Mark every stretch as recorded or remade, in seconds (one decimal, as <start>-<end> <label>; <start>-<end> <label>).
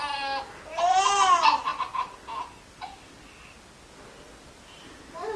0.0-5.4 recorded